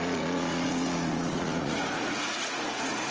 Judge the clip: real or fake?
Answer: fake